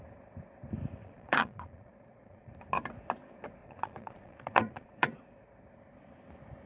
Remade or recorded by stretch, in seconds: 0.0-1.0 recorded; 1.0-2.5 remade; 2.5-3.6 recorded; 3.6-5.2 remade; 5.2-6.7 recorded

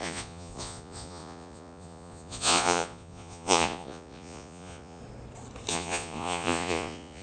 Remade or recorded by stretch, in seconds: 0.0-5.0 remade; 5.0-5.7 recorded; 5.7-7.2 remade

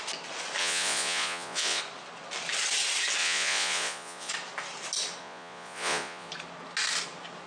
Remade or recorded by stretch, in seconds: 0.0-0.6 recorded; 0.6-1.8 remade; 1.8-3.2 recorded; 3.2-4.3 remade; 4.3-5.2 recorded; 5.2-6.3 remade; 6.3-7.5 recorded

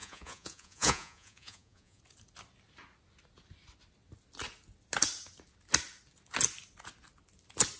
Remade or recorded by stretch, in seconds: 0.0-2.0 remade; 2.0-7.8 recorded

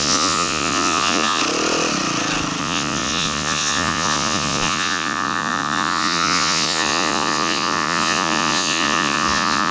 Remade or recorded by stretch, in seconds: 0.0-1.4 remade; 1.4-2.6 recorded; 2.6-9.7 remade